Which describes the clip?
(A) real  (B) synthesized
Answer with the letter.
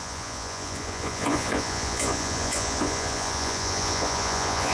B